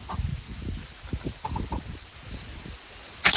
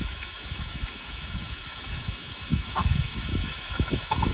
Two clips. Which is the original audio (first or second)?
first